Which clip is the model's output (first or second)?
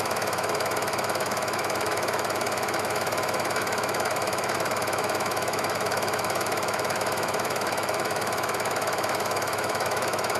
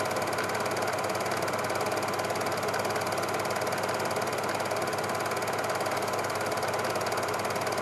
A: first